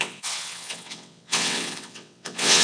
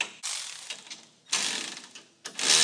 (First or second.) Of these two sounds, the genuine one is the second